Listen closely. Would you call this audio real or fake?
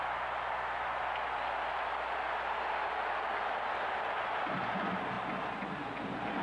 real